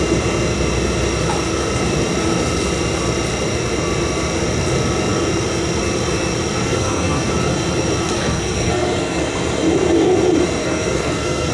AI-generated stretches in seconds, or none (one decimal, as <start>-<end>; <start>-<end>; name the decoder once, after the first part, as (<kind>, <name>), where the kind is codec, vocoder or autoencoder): 6.6-7.3 (codec, SNAC); 8.1-9.2; 10.6-11.5